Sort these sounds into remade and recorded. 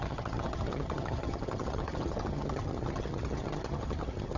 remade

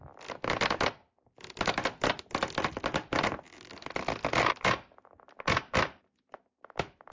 recorded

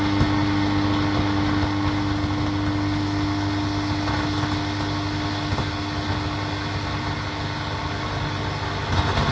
recorded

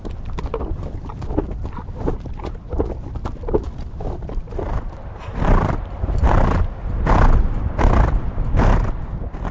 recorded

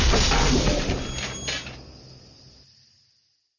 recorded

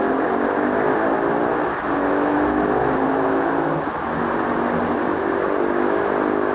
recorded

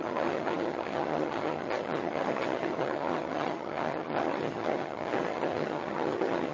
remade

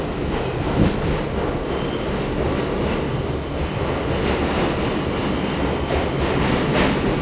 recorded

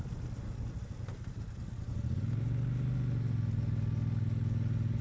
recorded